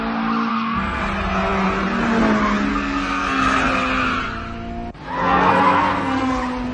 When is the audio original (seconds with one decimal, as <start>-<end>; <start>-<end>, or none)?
0.0-0.5; 1.0-2.7; 3.6-5.2; 6.3-6.7